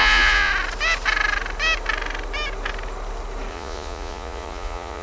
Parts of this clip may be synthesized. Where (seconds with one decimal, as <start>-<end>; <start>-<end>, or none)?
0.0-0.5; 3.5-5.0